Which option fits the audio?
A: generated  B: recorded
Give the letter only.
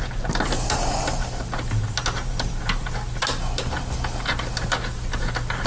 B